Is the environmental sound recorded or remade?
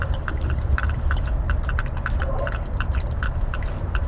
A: remade